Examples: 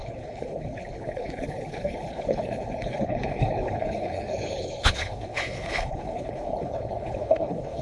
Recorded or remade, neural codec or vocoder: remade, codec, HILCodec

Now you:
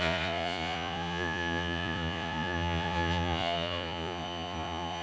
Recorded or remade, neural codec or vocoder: remade, vocoder, Vocos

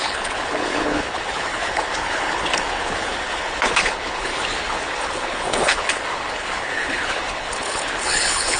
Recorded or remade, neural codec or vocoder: remade, codec, HILCodec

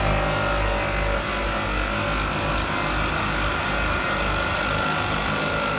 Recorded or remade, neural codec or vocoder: recorded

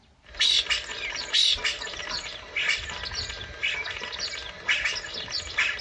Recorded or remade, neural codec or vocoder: recorded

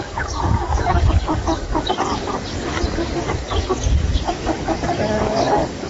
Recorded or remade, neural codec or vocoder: remade, codec, DAC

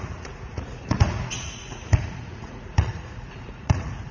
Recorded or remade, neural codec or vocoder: remade, vocoder, Vocos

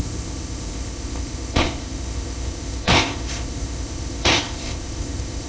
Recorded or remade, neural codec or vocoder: remade, codec, ZipCodec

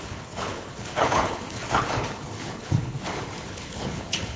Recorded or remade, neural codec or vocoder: remade, codec, HILCodec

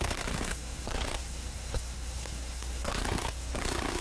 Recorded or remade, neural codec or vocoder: remade, codec, SNAC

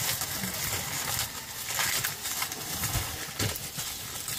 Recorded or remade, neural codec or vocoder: recorded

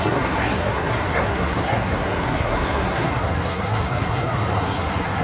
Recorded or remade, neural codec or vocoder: remade, codec, SNAC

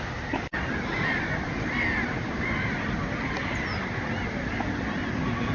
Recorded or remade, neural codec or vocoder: recorded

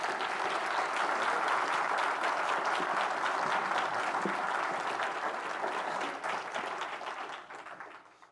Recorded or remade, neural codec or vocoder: recorded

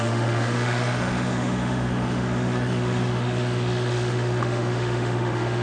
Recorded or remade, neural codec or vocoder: remade, autoencoder, DAC-VAE